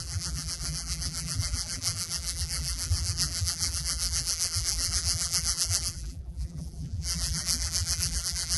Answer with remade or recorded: remade